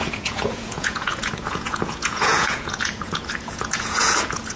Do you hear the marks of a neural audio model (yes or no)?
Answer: yes